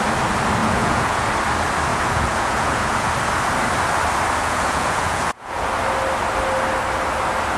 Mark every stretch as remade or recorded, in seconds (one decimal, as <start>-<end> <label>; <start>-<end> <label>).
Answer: 0.0-0.6 recorded; 0.6-1.3 remade; 1.3-1.9 recorded; 1.9-3.1 remade; 3.1-4.4 recorded; 4.4-5.7 remade; 5.7-7.6 recorded